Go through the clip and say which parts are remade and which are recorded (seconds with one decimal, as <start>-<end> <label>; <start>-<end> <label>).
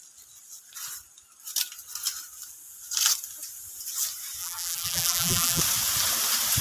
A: 0.0-4.4 recorded; 4.4-5.6 remade; 5.6-6.6 recorded